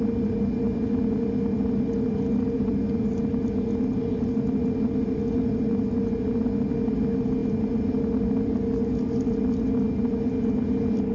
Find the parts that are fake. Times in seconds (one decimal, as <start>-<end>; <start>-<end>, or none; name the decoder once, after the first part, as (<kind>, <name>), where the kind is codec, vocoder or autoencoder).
none